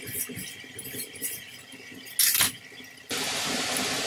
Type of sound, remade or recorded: recorded